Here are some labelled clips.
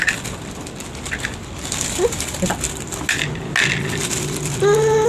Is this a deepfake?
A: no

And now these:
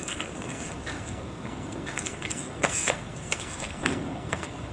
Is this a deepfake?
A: yes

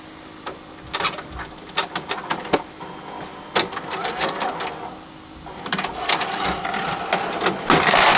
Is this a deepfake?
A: no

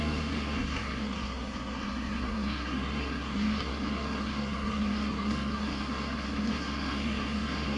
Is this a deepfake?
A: yes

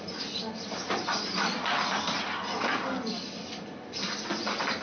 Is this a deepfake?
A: no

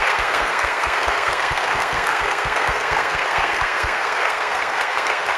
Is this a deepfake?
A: yes